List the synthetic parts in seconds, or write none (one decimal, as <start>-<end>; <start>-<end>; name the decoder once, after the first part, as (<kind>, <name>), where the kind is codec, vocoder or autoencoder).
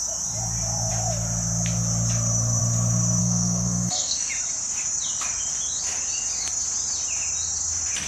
3.2-4.3 (codec, SNAC)